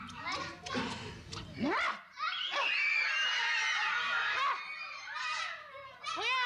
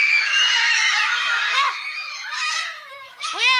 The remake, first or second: second